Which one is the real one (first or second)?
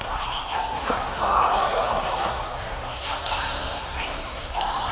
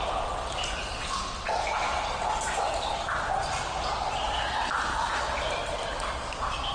second